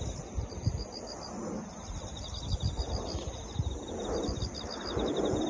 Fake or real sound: real